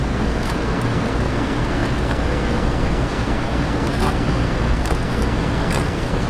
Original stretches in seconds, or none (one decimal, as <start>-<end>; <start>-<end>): none